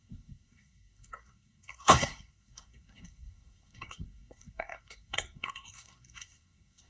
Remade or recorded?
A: remade